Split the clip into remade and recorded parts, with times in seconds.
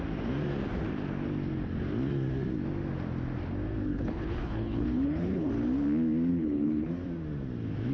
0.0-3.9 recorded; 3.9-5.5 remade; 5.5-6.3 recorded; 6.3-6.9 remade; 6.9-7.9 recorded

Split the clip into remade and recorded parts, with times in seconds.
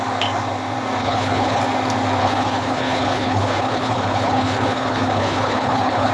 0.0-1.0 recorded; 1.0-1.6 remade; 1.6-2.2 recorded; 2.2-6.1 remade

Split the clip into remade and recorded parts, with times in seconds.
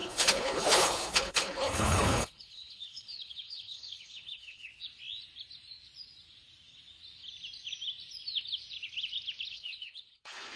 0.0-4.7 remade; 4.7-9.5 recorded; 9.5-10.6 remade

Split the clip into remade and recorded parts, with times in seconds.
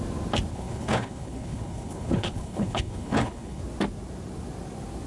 0.0-0.5 recorded; 0.5-3.6 remade; 3.6-5.1 recorded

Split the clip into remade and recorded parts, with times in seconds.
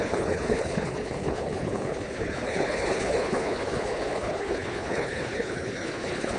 0.0-6.4 remade